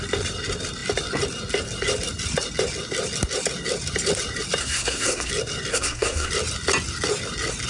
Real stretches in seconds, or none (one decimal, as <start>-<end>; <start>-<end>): 0.0-4.6; 5.3-5.7; 6.3-7.7